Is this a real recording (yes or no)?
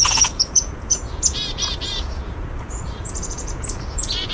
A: no